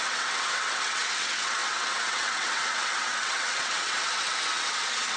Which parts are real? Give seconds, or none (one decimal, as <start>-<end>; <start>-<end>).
none